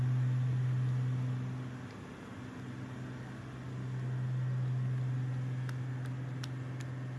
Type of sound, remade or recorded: recorded